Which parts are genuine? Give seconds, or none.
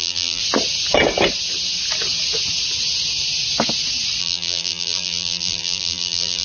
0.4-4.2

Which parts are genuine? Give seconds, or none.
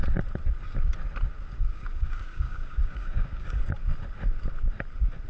0.0-1.7; 3.6-5.3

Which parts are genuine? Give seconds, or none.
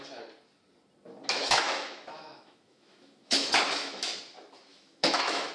0.0-1.4; 4.2-4.7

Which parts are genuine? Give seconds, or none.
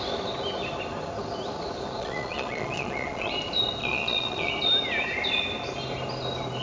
0.0-2.0; 3.3-3.8; 4.5-6.6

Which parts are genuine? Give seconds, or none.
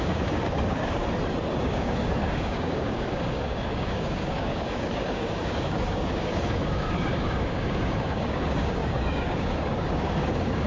1.0-1.6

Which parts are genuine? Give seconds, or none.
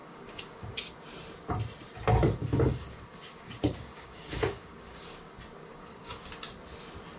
0.9-2.4; 5.3-5.7; 6.3-7.2